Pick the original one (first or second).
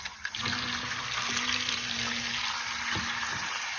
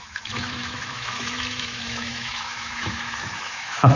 first